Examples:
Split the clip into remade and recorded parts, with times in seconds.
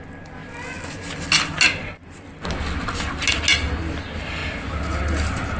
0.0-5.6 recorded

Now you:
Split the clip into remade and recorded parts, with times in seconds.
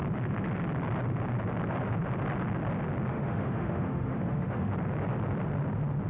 0.0-3.1 recorded; 3.1-4.7 remade; 4.7-6.1 recorded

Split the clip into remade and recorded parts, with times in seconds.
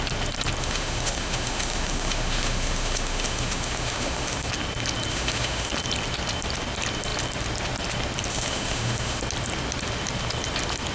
0.0-0.6 recorded; 0.6-4.5 remade; 4.5-5.1 recorded; 5.1-5.7 remade; 5.7-8.3 recorded; 8.3-9.2 remade; 9.2-10.9 recorded